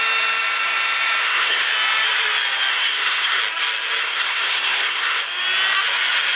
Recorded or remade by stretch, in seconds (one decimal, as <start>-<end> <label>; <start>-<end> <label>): 0.0-1.2 recorded; 1.2-1.7 remade; 1.7-2.7 recorded; 2.7-3.4 remade; 3.4-4.0 recorded; 4.0-5.2 remade; 5.2-6.4 recorded